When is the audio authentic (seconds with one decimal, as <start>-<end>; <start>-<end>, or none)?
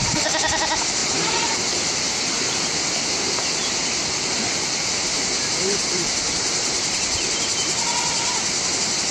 0.0-3.6; 7.5-9.1